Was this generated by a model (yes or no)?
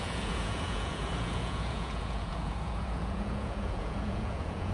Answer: yes